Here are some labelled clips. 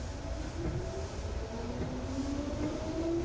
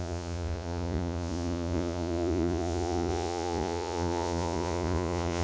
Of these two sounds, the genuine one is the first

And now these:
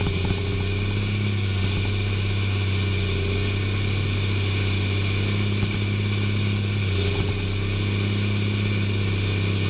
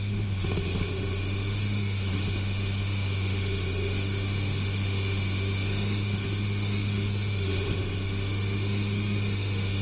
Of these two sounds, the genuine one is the first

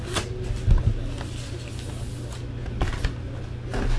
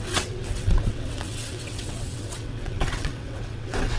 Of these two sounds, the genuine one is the first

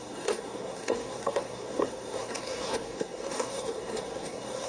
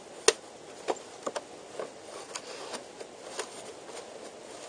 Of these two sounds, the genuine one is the second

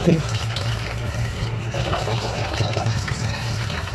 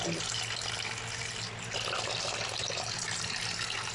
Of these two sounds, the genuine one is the second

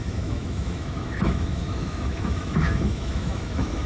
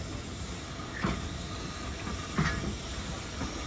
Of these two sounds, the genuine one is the second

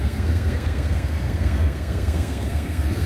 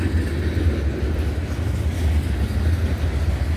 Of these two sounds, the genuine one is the second